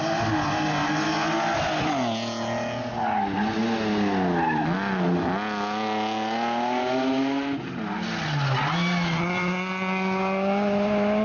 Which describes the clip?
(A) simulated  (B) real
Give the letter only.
B